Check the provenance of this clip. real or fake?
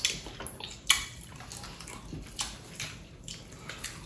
real